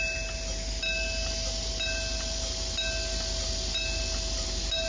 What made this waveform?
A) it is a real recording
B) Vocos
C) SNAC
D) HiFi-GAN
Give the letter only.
A